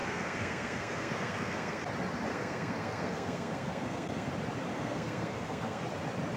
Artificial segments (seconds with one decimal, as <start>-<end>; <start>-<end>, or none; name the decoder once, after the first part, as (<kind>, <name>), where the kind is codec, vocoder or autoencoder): 0.0-1.8 (codec, SNAC); 2.3-4.3; 4.7-5.8